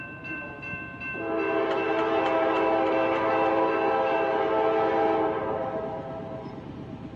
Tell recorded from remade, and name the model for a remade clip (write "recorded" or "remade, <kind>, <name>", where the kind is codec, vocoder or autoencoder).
remade, vocoder, BigVGAN v2